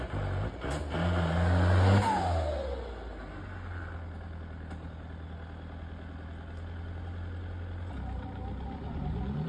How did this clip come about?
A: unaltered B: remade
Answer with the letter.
A